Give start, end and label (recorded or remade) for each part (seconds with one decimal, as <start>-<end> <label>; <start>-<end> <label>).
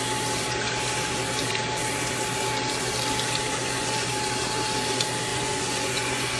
0.0-3.6 recorded; 3.6-4.1 remade; 4.1-5.3 recorded; 5.3-6.4 remade